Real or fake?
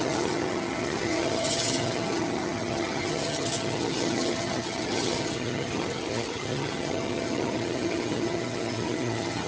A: fake